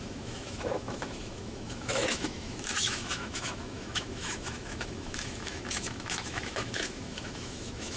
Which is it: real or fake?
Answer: fake